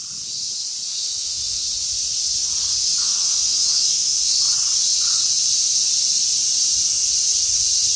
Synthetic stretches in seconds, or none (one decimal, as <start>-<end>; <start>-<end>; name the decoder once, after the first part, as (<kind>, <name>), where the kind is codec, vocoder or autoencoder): 0.9-1.6 (autoencoder, DAC-VAE); 3.0-4.4